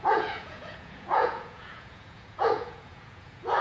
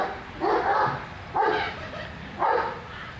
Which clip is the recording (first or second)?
second